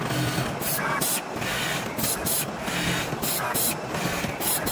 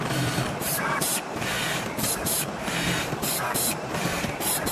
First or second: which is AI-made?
second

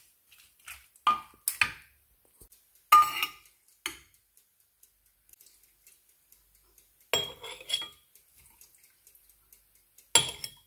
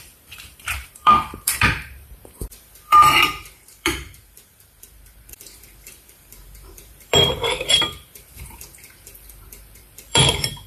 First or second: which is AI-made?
second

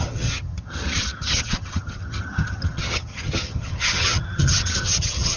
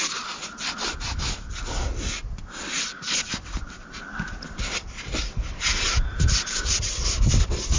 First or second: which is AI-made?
first